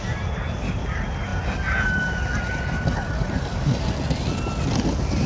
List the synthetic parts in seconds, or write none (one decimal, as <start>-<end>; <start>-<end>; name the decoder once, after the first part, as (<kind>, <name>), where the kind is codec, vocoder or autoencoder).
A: none